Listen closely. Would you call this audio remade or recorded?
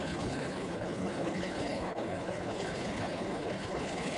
remade